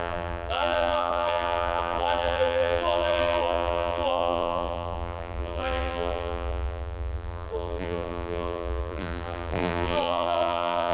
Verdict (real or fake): fake